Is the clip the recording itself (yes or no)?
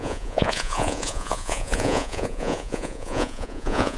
no